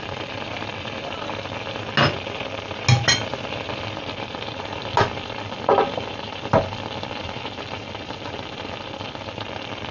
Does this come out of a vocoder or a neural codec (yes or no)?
no